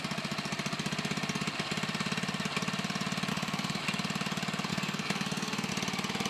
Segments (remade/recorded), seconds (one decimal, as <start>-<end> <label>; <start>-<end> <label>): 0.0-3.3 recorded; 3.3-3.8 remade; 3.8-4.7 recorded; 4.7-5.7 remade; 5.7-6.3 recorded